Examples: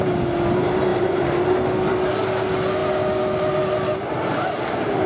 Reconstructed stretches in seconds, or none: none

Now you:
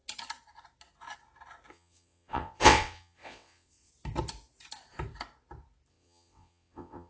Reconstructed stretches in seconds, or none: 1.7-3.9 (vocoder, WaveNeXt); 5.9-7.1

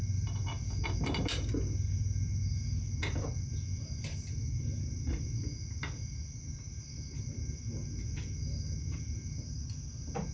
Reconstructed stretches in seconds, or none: none

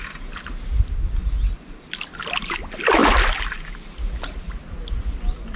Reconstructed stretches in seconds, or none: none